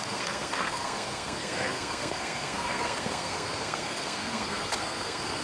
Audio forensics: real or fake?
fake